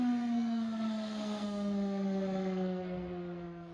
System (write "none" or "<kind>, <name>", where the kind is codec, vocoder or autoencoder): codec, SNAC